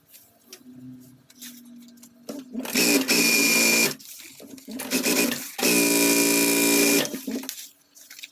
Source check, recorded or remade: recorded